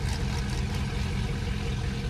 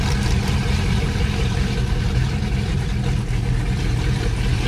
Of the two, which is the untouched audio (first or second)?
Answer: first